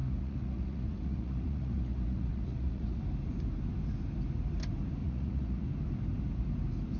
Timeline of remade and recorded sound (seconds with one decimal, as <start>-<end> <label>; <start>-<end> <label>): 0.0-3.0 remade; 3.0-5.0 recorded; 5.0-5.7 remade; 5.7-7.0 recorded